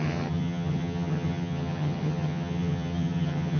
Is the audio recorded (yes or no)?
no